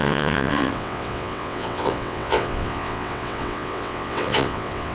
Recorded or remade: remade